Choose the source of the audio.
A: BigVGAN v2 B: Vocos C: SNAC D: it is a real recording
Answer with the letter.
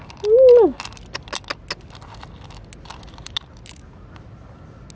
D